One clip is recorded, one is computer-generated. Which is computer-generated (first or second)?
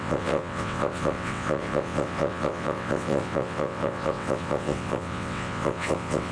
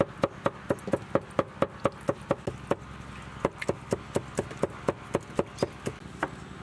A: first